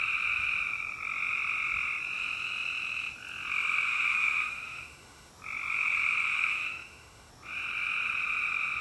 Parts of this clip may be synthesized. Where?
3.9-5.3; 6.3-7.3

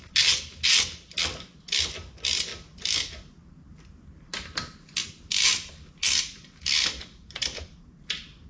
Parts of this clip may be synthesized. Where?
none

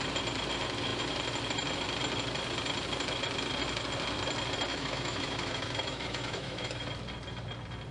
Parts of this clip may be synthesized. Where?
4.7-6.9

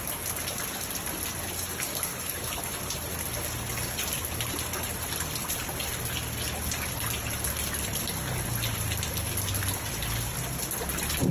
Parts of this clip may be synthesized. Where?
2.1-2.8